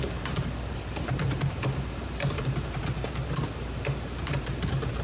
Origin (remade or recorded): remade